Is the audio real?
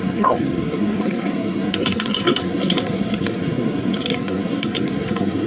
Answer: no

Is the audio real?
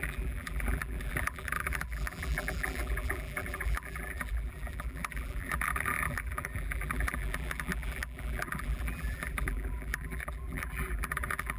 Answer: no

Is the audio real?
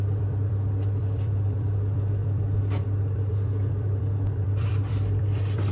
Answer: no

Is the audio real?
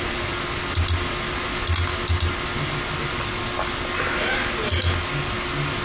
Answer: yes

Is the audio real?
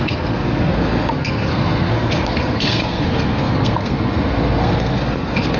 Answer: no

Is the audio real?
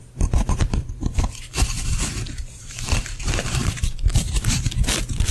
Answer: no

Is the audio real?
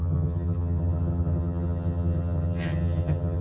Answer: no